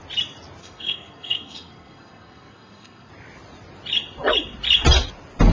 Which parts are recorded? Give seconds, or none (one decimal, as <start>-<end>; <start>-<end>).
0.0-0.6; 3.1-5.5